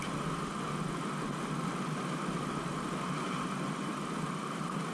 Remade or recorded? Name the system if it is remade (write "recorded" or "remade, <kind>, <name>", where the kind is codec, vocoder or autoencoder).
recorded